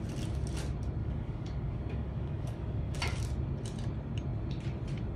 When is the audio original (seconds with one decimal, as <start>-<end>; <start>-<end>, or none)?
0.0-1.0; 3.0-5.2